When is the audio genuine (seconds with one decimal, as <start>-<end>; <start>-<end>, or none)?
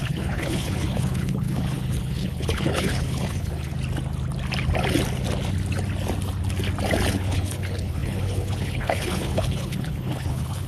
3.7-7.1